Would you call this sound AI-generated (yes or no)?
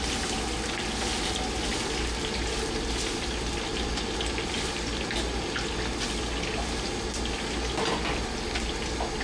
no